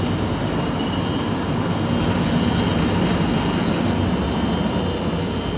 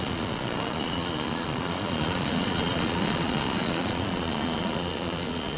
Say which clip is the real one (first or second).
first